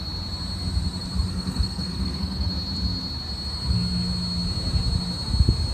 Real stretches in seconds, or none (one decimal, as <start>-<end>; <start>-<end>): 0.0-1.3; 2.5-5.7

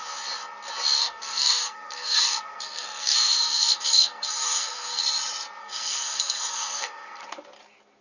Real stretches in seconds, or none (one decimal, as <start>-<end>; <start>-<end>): 0.0-1.0; 5.0-5.6; 7.2-8.0

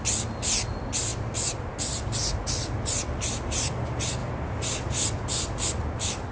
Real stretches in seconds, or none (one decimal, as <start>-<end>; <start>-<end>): 0.0-6.3

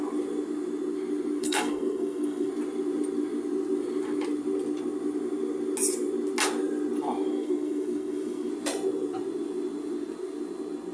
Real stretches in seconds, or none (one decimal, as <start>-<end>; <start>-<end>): 0.0-1.4; 2.5-7.3; 8.5-10.9